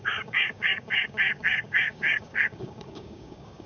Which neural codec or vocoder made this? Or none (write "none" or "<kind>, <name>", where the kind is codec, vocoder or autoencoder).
codec, DAC